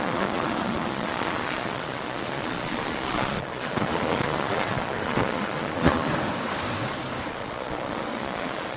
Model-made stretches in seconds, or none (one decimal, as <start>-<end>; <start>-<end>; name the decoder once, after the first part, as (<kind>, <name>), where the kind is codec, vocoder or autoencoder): 0.0-6.1 (vocoder, Vocos); 7.3-8.8